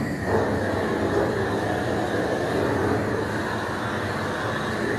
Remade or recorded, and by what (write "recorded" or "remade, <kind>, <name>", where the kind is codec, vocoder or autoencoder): recorded